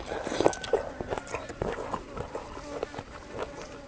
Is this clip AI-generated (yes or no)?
no